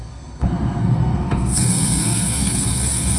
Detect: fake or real fake